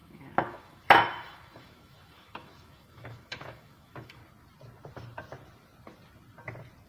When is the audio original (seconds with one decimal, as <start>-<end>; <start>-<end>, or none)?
4.2-6.9

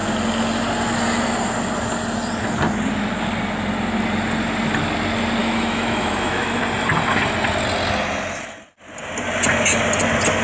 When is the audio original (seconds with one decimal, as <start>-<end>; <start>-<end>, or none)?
0.0-5.4; 6.6-10.4

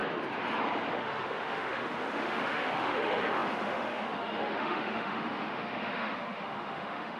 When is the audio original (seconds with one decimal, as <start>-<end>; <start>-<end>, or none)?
0.0-0.9

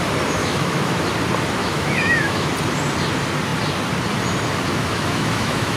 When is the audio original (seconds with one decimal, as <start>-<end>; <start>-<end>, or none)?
0.0-0.4; 1.1-1.6; 2.5-4.7

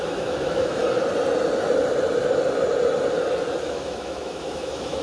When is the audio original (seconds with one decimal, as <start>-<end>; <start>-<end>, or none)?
0.8-3.6

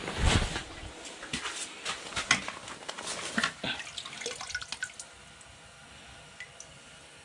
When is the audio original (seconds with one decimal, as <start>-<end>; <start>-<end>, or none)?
0.0-7.2

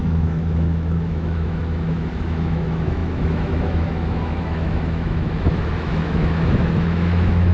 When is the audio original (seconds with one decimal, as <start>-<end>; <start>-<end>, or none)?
none